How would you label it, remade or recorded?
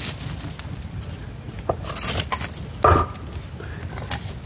recorded